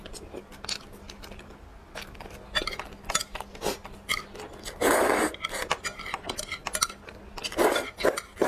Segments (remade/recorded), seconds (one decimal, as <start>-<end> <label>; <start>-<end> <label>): 0.0-8.5 recorded